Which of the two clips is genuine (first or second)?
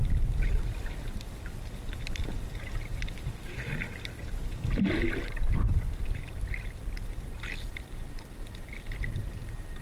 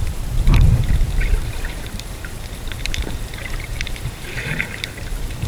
first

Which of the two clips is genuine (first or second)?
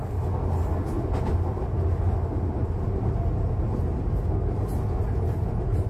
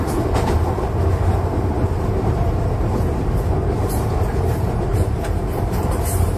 first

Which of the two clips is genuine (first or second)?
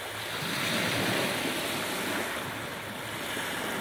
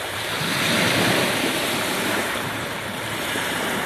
first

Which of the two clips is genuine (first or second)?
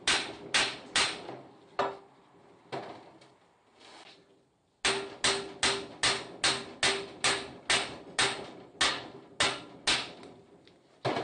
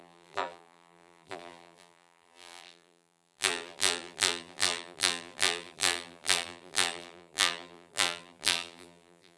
first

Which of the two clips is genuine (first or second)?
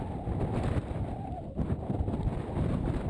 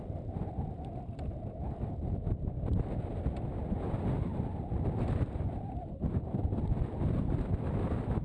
second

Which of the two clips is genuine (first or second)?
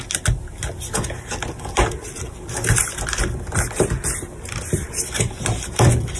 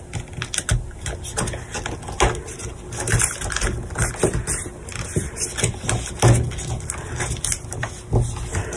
second